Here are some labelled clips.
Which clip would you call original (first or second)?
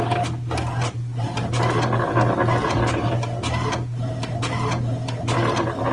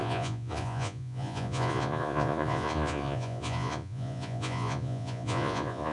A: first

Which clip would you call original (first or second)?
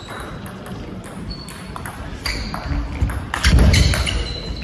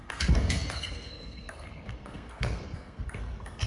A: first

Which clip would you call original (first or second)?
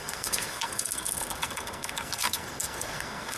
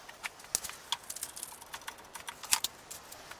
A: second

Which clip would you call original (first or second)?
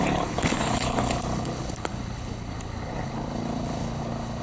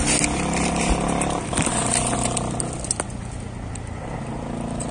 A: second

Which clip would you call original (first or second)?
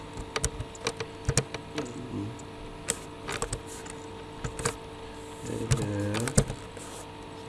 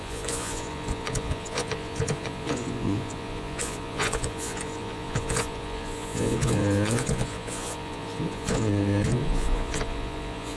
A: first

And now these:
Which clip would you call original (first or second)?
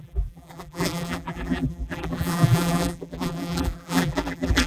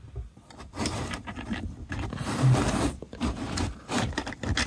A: second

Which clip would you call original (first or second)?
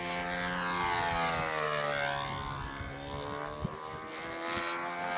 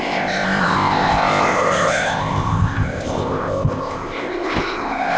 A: first